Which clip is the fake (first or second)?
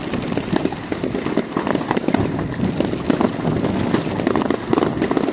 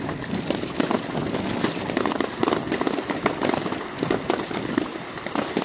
second